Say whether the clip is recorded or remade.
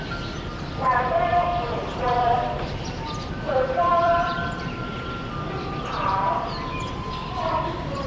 remade